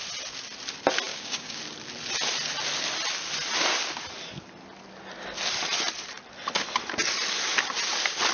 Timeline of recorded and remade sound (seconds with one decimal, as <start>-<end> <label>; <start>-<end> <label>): 0.0-1.1 recorded; 1.1-1.6 remade; 1.6-8.3 recorded